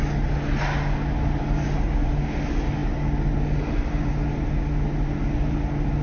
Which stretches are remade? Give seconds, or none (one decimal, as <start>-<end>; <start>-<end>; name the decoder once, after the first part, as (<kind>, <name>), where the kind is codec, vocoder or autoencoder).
none